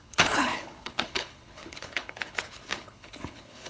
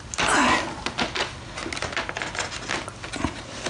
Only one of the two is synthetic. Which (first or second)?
first